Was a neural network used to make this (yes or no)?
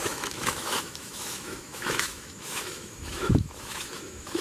yes